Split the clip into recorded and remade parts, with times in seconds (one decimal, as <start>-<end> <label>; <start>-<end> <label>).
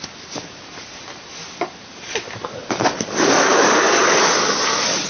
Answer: 0.0-5.1 recorded